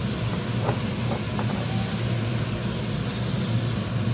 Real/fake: real